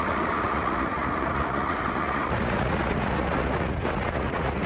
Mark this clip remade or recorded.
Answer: remade